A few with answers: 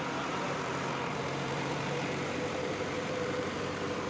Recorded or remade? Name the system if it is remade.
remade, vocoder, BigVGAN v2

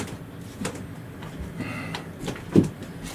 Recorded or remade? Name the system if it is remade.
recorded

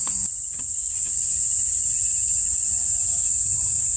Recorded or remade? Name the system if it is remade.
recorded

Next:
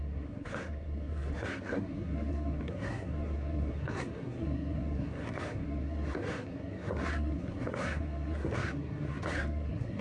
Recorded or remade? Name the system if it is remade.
remade, codec, SNAC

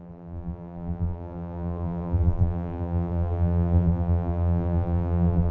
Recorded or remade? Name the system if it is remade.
remade, vocoder, BigVGAN v2